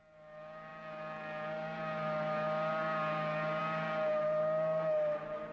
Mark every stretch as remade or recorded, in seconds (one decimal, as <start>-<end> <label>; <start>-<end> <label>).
0.0-5.5 recorded

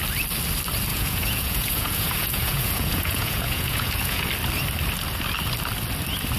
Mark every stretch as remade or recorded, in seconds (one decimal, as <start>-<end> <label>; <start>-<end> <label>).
0.0-0.9 recorded; 0.9-4.3 remade; 4.3-6.4 recorded

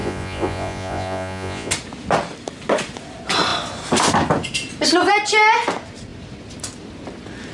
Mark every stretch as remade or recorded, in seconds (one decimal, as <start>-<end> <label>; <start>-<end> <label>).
0.0-1.7 remade; 1.7-7.5 recorded

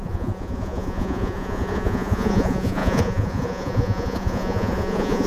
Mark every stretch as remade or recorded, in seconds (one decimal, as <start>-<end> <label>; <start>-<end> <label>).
0.0-5.3 remade

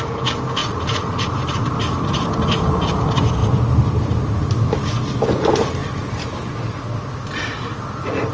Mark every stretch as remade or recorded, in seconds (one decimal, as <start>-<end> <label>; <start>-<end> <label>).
0.0-0.6 recorded; 0.6-1.3 remade; 1.3-8.3 recorded

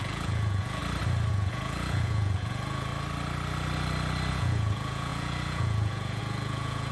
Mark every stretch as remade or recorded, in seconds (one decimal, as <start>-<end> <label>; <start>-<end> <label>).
0.0-0.8 remade; 0.8-1.3 recorded; 1.3-2.9 remade; 2.9-4.3 recorded; 4.3-6.9 remade

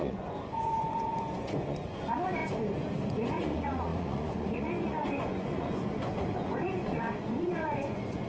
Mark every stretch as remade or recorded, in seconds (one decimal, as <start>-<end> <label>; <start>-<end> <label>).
0.0-2.4 remade; 2.4-3.1 recorded; 3.1-8.3 remade

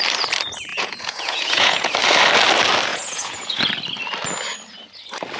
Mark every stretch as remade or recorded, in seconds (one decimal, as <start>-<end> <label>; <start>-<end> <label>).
0.0-0.7 recorded; 0.7-1.9 remade; 1.9-2.9 recorded; 2.9-3.6 remade; 3.6-5.4 recorded